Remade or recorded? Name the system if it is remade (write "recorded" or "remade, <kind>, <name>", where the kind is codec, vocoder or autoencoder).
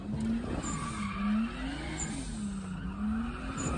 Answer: recorded